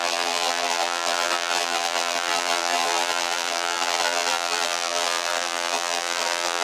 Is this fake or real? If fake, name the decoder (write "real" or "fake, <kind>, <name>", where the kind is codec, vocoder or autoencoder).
fake, vocoder, BigVGAN v2